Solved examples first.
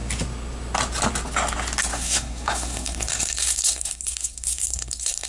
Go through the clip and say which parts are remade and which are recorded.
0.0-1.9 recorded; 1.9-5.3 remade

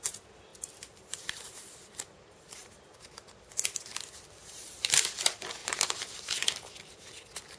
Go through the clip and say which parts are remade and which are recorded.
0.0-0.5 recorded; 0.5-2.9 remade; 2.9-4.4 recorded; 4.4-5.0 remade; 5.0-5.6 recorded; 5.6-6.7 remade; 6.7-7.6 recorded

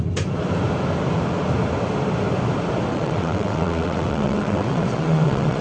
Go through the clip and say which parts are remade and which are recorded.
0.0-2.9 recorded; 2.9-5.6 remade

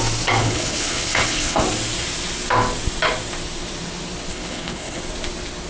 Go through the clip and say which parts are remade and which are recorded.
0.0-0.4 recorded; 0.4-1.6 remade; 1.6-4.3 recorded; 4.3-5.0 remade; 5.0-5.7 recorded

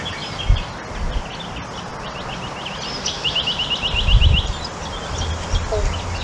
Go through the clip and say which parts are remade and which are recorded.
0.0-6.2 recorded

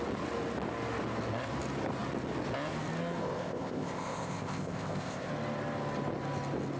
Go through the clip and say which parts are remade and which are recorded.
0.0-3.2 recorded; 3.2-5.3 remade; 5.3-6.8 recorded

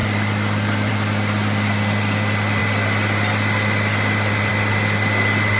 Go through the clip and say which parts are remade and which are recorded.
0.0-5.6 recorded

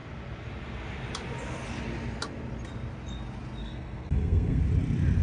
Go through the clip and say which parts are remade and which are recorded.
0.0-3.6 recorded; 3.6-4.6 remade; 4.6-5.2 recorded